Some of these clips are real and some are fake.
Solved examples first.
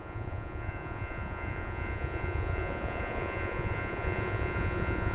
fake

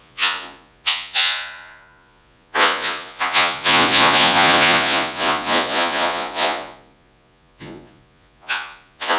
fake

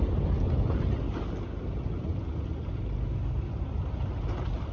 real